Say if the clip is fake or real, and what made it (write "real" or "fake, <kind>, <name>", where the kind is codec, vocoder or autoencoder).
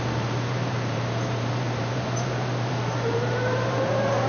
fake, vocoder, BigVGAN v2